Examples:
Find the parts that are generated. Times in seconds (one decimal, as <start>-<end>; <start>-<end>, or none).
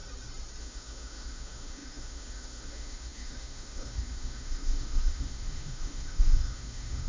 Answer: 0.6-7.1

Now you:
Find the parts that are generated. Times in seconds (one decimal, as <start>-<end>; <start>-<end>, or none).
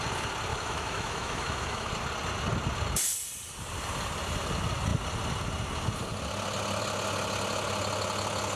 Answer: 0.5-1.9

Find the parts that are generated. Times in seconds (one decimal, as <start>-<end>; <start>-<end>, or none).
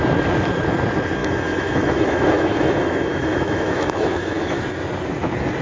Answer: 1.2-4.6